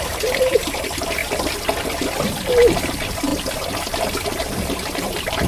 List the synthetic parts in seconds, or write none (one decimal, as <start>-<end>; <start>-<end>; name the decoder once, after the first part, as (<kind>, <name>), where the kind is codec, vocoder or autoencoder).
0.0-1.2 (vocoder, BigVGAN v2); 2.5-3.3; 3.8-5.5